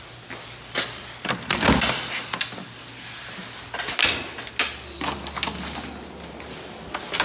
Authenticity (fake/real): real